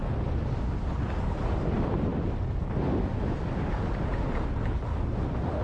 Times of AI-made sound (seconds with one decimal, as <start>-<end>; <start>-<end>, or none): 0.0-5.6